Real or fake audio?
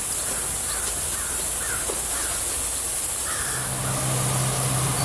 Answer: real